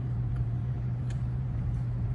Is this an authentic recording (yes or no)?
no